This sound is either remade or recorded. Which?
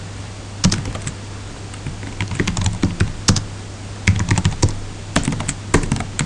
recorded